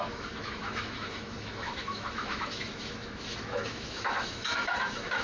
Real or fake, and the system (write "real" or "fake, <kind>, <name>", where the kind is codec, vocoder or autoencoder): fake, autoencoder, DAC-VAE